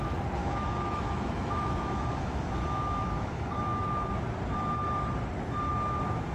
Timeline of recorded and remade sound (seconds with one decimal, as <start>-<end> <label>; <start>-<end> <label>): 0.0-0.4 recorded; 0.4-4.2 remade; 4.2-6.3 recorded